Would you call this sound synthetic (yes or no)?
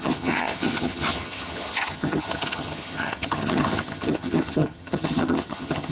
yes